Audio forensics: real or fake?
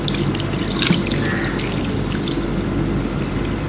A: real